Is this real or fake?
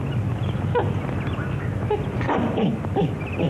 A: real